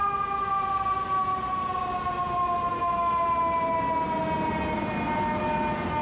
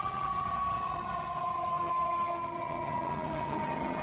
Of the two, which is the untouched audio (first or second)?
first